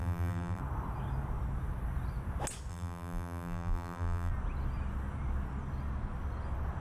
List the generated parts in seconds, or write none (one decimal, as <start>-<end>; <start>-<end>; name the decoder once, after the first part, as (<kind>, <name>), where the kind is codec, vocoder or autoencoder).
0.0-0.6 (vocoder, BigVGAN v2); 2.7-4.3